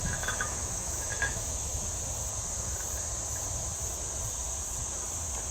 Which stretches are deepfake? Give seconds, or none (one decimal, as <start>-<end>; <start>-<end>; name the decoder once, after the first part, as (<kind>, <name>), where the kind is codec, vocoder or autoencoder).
0.0-1.8 (autoencoder, DAC-VAE)